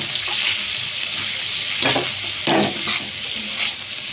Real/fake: real